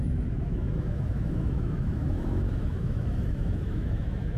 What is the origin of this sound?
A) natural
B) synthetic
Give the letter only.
B